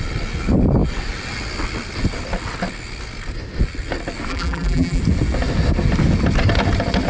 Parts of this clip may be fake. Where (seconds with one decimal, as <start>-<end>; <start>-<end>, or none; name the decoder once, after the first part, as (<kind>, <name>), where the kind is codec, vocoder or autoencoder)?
4.3-5.0 (vocoder, BigVGAN v2)